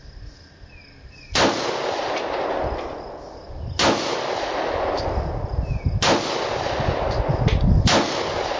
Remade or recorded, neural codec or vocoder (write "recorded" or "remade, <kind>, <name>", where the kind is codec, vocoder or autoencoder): recorded